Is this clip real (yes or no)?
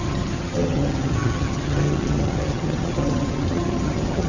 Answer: no